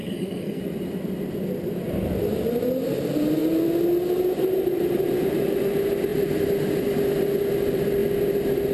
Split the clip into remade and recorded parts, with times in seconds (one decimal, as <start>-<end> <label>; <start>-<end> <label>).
0.0-0.6 remade; 0.6-8.7 recorded